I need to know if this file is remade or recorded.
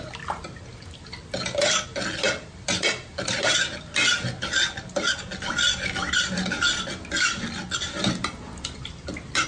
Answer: recorded